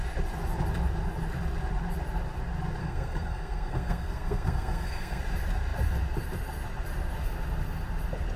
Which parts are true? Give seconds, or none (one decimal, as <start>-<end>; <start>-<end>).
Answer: 0.0-2.8; 5.2-8.4